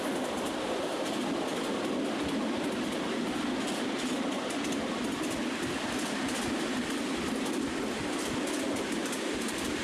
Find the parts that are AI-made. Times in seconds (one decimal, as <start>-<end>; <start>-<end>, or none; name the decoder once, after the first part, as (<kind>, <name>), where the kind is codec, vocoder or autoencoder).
9.0-9.8 (vocoder, BigVGAN v2)